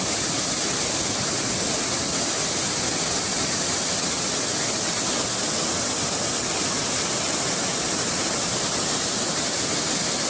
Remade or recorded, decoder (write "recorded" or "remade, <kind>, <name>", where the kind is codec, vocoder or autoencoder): recorded